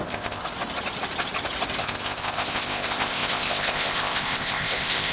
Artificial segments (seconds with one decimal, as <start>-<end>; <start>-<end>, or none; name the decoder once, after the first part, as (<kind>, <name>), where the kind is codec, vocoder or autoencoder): 0.0-0.4 (codec, ZipCodec); 1.8-5.1